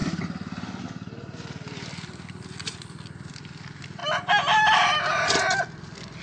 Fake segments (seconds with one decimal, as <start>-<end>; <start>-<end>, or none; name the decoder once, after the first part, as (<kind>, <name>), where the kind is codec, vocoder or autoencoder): none